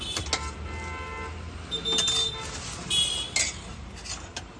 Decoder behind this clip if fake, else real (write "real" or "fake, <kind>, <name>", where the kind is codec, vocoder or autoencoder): real